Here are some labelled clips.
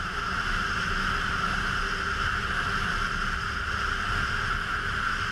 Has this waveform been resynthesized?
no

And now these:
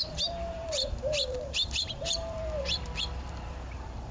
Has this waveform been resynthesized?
yes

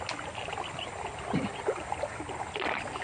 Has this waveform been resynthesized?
no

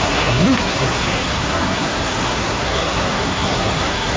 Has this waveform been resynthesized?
yes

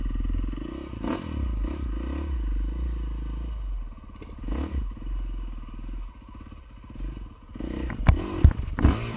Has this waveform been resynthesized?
no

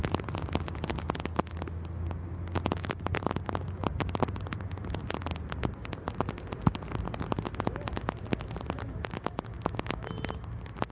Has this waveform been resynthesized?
no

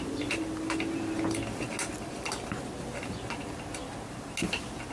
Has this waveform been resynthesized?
no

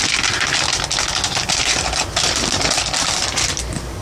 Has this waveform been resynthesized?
no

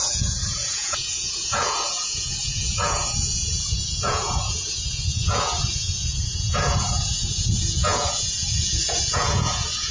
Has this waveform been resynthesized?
yes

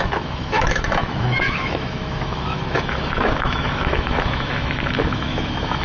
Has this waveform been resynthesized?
yes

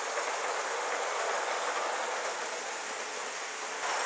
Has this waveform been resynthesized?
no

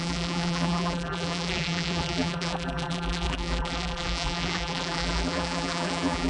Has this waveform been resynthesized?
yes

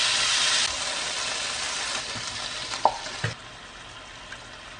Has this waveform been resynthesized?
yes